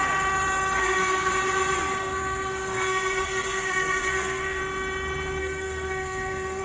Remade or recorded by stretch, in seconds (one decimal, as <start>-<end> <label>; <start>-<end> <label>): 0.0-0.8 recorded; 0.8-1.3 remade; 1.3-2.0 recorded; 2.0-4.6 remade; 4.6-5.4 recorded; 5.4-6.6 remade